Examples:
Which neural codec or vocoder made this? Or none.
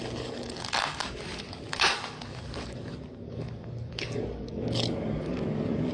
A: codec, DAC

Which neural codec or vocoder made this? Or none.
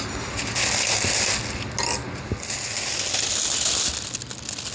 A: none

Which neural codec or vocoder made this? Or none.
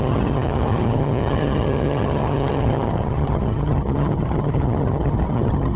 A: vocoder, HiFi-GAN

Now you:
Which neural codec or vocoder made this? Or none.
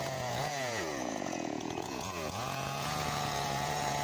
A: vocoder, Vocos